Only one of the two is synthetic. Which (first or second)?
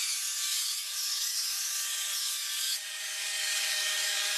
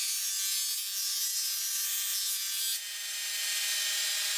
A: first